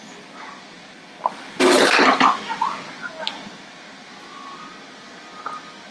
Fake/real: real